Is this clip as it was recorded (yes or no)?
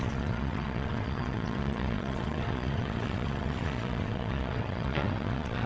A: no